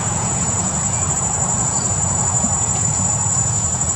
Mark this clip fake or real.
fake